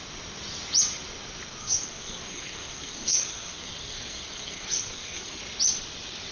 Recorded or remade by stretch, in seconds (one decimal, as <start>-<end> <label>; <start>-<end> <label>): 0.0-1.6 recorded; 1.6-5.4 remade; 5.4-6.3 recorded